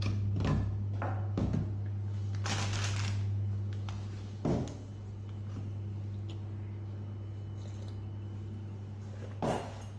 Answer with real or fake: real